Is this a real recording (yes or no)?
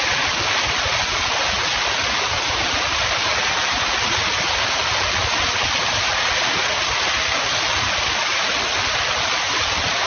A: yes